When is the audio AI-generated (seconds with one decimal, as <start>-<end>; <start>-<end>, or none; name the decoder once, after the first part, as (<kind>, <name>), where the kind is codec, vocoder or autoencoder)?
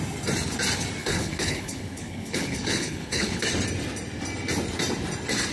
1.0-3.4 (codec, HILCodec)